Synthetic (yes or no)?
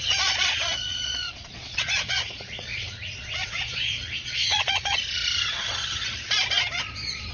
yes